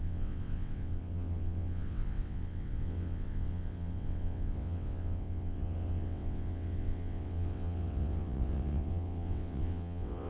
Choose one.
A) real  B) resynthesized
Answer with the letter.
B